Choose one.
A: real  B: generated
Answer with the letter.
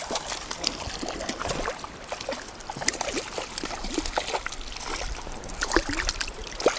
A